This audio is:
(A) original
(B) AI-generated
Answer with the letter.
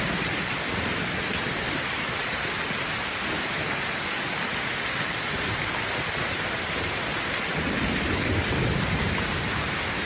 A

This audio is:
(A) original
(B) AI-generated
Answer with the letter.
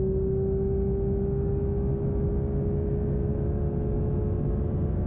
A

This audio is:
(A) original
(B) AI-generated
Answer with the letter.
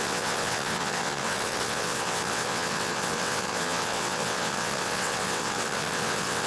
B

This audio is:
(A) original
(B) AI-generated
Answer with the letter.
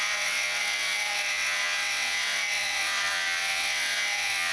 B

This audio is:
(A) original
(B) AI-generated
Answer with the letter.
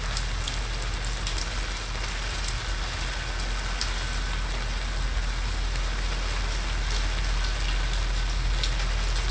A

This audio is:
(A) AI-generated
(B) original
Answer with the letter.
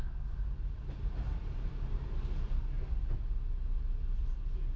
B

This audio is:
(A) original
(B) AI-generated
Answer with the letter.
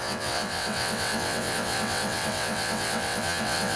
B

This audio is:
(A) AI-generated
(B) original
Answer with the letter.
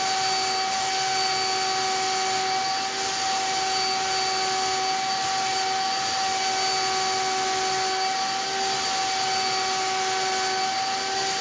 B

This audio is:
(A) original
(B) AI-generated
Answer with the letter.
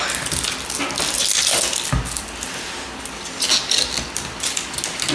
A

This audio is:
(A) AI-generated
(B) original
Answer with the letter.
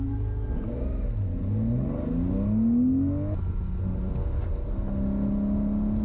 B